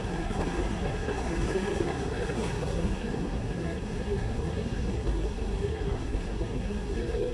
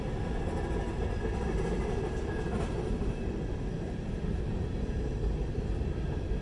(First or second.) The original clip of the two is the second